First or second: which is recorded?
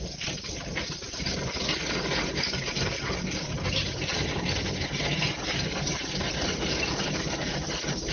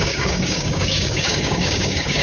first